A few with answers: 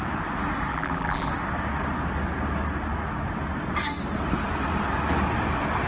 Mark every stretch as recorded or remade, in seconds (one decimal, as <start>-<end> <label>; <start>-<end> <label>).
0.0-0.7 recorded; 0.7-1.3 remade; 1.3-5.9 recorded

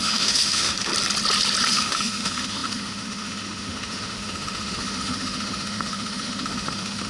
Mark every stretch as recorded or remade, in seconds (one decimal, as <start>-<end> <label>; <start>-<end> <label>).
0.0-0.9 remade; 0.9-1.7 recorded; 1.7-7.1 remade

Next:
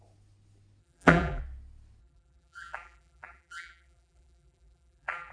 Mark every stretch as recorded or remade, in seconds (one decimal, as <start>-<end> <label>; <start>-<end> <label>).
0.0-0.8 recorded; 0.8-1.4 remade; 1.4-2.0 recorded; 2.0-5.3 remade

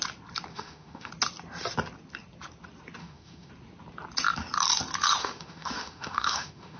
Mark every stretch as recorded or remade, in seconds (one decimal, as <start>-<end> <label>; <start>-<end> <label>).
0.0-0.5 recorded; 0.5-1.1 remade; 1.1-3.0 recorded; 3.0-3.5 remade; 3.5-5.2 recorded; 5.2-6.8 remade